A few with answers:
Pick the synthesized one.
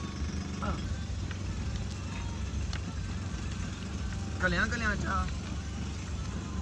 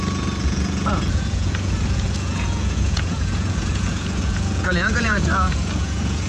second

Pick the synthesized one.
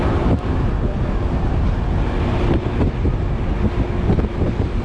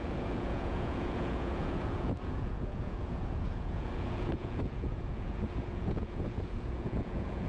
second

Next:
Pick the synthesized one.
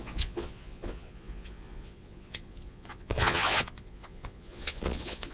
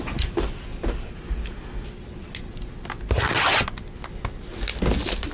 first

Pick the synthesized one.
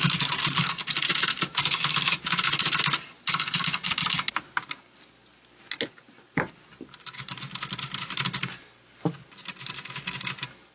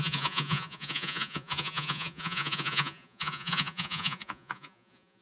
second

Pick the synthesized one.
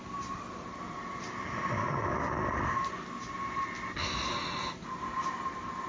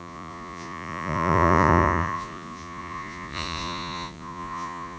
second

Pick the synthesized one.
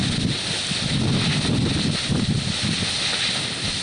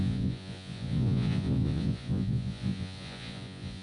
second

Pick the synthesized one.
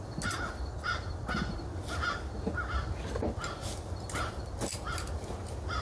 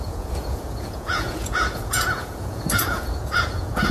second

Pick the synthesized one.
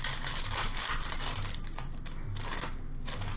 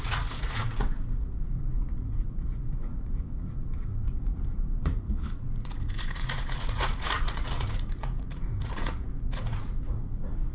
second